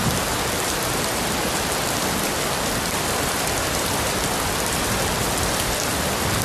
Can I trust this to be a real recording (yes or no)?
no